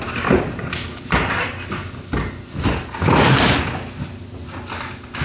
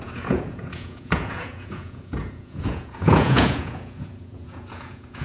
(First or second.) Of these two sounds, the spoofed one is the second